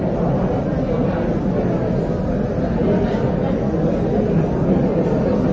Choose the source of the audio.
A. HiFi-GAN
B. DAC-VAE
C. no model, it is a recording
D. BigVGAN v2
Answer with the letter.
C